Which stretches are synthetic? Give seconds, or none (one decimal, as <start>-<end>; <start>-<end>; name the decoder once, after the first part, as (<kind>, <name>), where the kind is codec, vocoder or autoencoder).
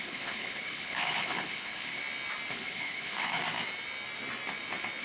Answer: 0.0-2.0 (codec, HILCodec); 2.5-3.4